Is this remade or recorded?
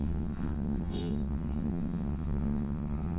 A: remade